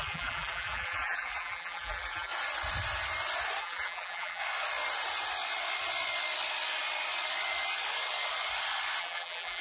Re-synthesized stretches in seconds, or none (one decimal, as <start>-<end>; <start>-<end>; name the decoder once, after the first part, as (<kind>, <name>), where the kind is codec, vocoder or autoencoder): 0.0-2.3 (vocoder, BigVGAN v2); 3.6-4.4; 9.0-9.6